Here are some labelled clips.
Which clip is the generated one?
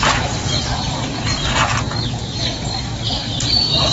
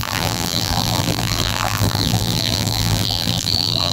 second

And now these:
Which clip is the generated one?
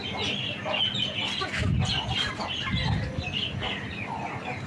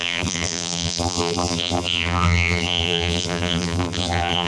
second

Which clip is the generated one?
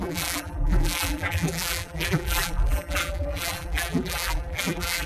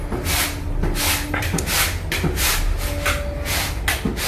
first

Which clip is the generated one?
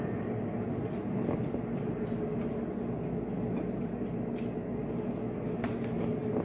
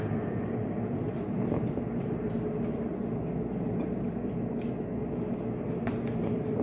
second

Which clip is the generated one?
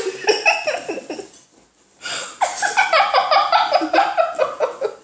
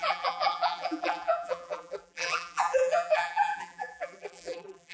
second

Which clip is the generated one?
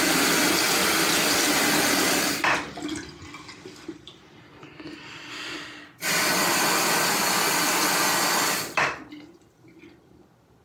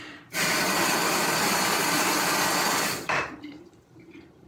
second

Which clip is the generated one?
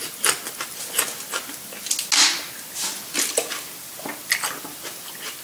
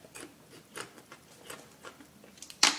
second